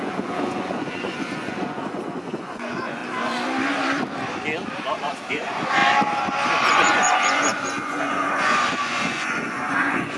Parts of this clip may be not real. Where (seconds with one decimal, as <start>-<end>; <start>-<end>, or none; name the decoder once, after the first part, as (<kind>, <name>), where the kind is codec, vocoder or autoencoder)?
0.0-3.0 (vocoder, Vocos); 5.3-5.8; 6.7-10.2